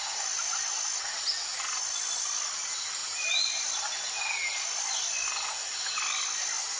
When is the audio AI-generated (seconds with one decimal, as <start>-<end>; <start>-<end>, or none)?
none